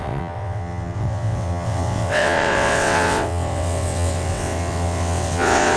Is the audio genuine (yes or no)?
no